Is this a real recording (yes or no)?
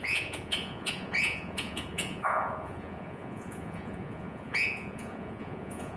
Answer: no